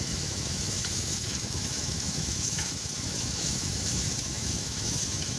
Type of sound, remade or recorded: remade